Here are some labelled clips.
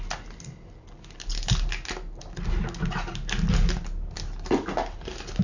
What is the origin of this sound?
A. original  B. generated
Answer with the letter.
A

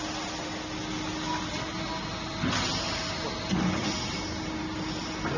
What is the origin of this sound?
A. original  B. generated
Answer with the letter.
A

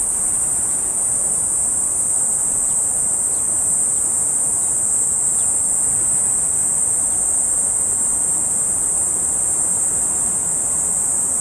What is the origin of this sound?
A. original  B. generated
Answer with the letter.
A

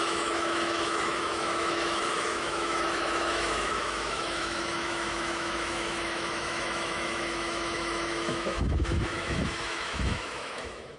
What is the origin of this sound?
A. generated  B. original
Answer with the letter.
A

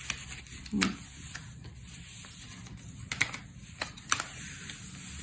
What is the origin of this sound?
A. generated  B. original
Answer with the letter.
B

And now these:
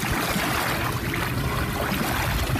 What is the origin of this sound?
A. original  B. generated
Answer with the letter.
A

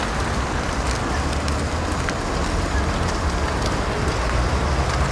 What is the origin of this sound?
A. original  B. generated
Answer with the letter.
A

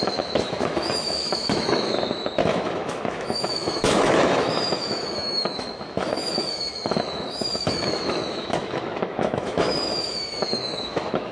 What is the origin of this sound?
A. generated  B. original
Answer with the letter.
A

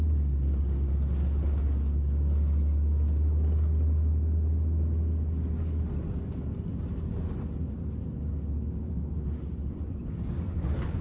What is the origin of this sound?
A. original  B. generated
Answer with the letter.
A